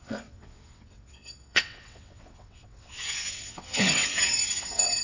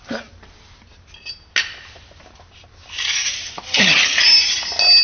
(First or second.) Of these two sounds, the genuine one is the second